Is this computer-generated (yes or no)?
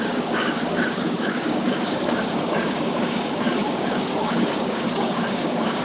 yes